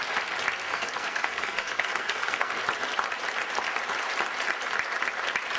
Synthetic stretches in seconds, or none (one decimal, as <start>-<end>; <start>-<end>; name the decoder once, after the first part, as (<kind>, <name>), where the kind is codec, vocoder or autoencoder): 0.6-2.6 (codec, SNAC)